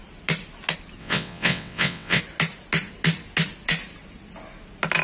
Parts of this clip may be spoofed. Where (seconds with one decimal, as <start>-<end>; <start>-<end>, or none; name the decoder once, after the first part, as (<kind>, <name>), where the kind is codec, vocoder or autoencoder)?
1.0-2.2 (vocoder, WaveNeXt)

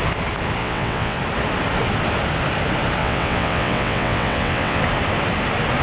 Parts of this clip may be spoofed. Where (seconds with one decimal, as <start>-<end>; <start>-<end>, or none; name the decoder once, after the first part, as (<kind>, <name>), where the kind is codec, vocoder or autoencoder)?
0.6-1.2 (vocoder, WaveNeXt); 3.0-4.8

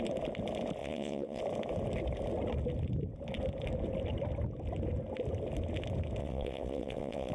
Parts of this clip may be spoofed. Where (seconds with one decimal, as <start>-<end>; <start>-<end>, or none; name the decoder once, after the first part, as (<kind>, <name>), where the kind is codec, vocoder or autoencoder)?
0.8-1.4 (vocoder, WaveNeXt); 6.2-7.3